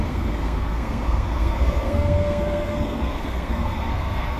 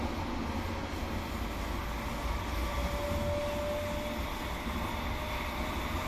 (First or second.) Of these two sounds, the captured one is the second